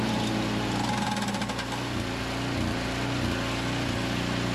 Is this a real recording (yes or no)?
yes